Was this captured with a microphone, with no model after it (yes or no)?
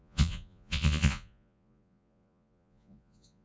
no